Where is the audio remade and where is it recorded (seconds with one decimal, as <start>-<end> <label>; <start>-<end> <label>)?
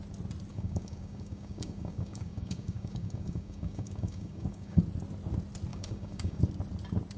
0.0-0.5 recorded; 0.5-4.8 remade; 4.8-5.7 recorded; 5.7-6.4 remade; 6.4-7.2 recorded